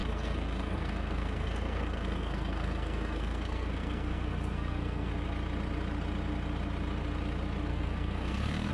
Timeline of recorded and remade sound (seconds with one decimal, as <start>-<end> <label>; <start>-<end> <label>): 0.0-5.1 remade; 5.1-7.7 recorded; 7.7-8.7 remade